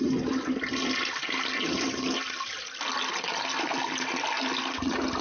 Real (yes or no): yes